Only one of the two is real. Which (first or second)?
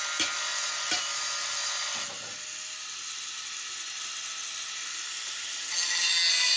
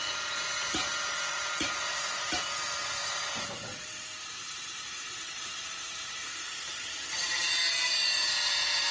first